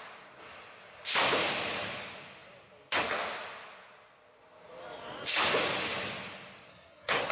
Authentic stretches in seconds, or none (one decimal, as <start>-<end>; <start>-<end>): 0.0-6.7